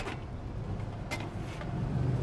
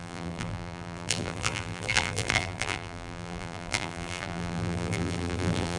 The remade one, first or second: second